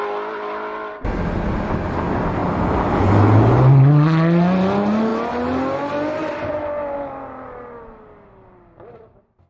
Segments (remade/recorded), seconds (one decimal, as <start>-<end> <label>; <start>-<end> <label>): 0.0-9.5 recorded